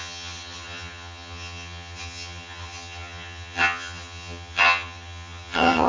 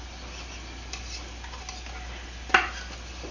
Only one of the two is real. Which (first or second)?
second